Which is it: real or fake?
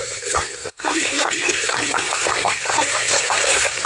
fake